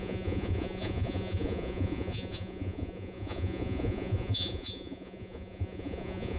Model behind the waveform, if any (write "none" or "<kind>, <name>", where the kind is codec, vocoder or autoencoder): vocoder, Vocos